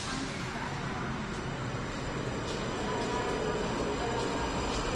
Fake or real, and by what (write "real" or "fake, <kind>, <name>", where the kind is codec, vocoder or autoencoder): real